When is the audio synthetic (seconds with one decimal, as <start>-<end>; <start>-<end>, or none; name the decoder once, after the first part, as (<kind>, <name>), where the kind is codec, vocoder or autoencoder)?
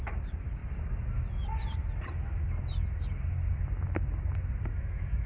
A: 4.7-5.3 (autoencoder, DAC-VAE)